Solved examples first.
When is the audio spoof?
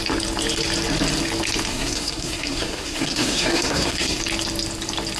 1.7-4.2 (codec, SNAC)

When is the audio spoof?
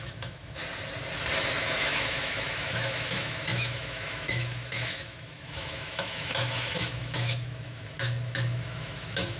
0.0-0.6 (autoencoder, DAC-VAE); 1.6-9.4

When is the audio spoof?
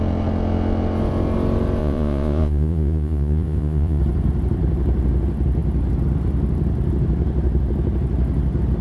1.8-4.0 (vocoder, Vocos)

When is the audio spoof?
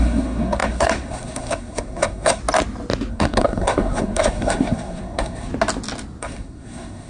0.0-2.4 (codec, SNAC); 3.1-5.5; 6.2-7.1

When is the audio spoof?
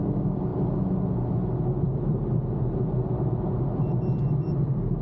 none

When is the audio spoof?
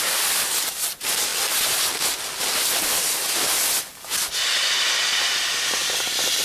5.8-6.4 (vocoder, BigVGAN v2)